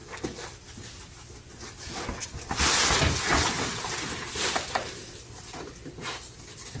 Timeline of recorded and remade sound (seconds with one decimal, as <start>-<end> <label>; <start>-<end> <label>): 0.0-6.8 recorded